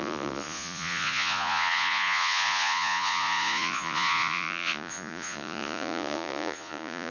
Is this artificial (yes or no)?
yes